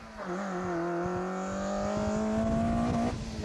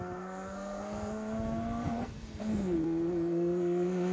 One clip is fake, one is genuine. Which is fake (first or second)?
second